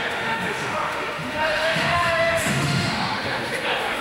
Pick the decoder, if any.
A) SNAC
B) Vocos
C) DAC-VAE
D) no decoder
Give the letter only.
C